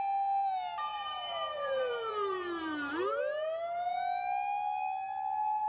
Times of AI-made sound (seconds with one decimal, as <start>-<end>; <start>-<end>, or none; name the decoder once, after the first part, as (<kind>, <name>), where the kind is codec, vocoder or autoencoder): 0.9-3.2 (vocoder, BigVGAN v2)